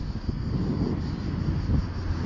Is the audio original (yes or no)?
yes